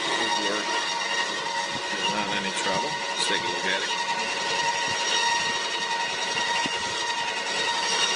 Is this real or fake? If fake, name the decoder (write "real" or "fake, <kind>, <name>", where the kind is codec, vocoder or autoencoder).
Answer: real